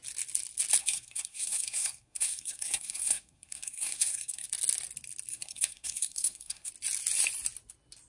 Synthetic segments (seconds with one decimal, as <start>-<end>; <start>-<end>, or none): 0.8-4.5; 5.3-6.7